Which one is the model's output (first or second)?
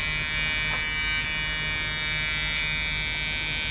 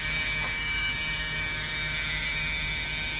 second